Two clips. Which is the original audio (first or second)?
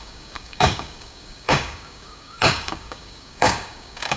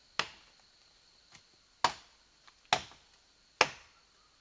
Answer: second